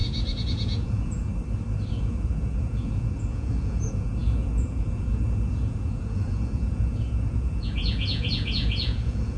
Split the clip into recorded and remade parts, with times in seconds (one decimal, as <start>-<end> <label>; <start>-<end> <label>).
0.0-1.3 remade; 1.3-1.9 recorded; 1.9-9.4 remade